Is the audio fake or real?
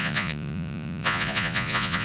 fake